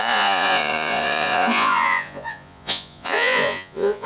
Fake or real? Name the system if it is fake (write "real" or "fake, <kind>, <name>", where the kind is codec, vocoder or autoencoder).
fake, vocoder, Vocos